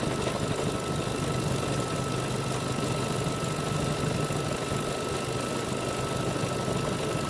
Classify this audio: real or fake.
real